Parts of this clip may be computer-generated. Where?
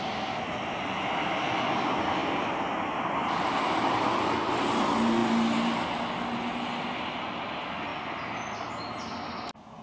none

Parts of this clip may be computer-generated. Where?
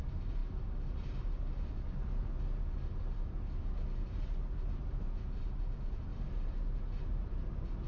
none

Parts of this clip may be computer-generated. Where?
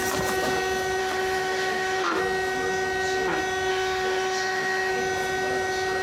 1.0-2.2 (autoencoder, DAC-VAE); 3.7-4.9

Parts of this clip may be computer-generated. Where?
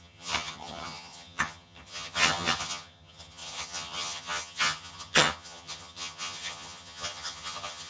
0.0-7.9 (vocoder, HiFi-GAN)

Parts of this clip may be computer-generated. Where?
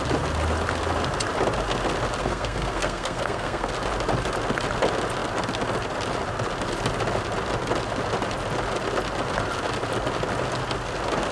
2.2-3.7 (codec, SNAC)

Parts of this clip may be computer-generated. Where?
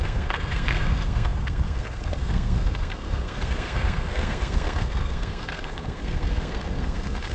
0.0-7.3 (codec, SNAC)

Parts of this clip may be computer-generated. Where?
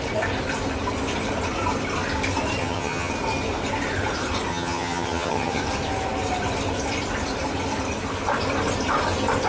2.6-3.1 (vocoder, HiFi-GAN); 4.5-5.6